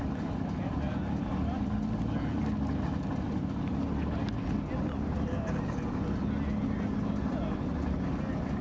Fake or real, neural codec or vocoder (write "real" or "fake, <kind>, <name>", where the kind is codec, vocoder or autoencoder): real